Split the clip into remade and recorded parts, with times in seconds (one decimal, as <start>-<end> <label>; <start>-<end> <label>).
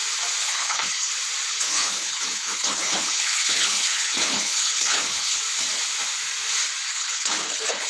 0.0-0.4 recorded; 0.4-1.1 remade; 1.1-1.5 recorded; 1.5-5.4 remade; 5.4-6.9 recorded; 6.9-7.9 remade